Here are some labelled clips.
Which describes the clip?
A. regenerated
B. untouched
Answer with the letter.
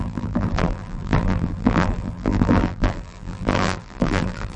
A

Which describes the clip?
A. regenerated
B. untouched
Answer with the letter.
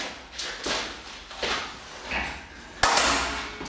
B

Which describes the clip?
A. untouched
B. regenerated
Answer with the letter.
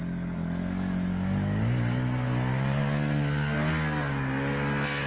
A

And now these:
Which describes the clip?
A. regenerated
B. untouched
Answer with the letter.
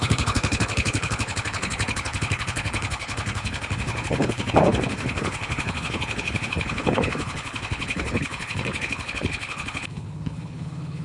A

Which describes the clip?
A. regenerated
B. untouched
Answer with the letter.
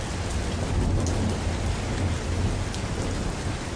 B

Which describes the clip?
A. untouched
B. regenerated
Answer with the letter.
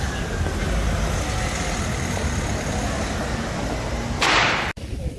A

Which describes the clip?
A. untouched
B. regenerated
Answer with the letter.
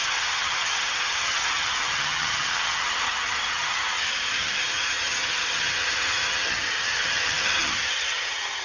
B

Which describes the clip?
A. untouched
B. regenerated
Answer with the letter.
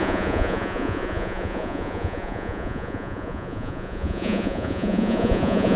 B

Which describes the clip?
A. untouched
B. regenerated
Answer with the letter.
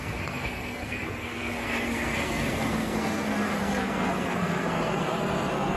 B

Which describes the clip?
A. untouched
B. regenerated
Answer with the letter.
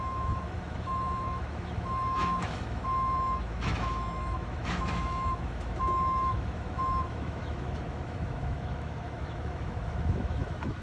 B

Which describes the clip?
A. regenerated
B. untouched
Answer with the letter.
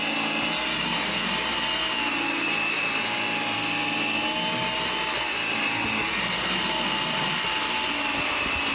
B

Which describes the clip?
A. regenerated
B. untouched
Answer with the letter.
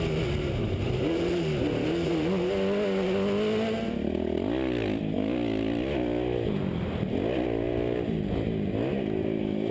B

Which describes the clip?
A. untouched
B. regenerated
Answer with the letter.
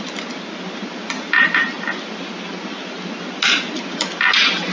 A